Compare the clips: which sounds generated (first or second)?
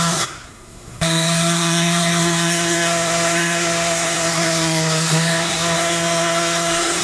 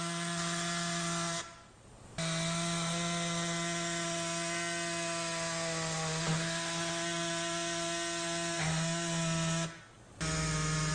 first